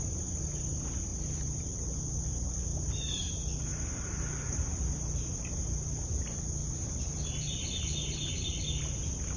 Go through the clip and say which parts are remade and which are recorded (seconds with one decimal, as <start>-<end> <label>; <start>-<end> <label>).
0.0-9.4 recorded